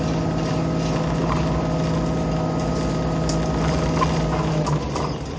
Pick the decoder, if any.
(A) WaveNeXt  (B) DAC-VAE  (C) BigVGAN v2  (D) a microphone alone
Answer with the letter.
D